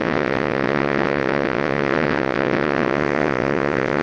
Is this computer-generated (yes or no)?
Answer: yes